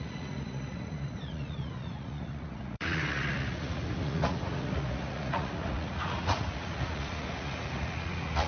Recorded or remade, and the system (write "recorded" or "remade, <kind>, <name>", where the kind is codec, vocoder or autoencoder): remade, vocoder, Vocos